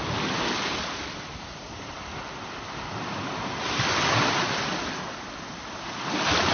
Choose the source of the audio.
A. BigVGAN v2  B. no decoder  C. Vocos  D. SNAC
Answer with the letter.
B